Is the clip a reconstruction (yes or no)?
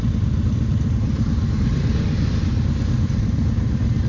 yes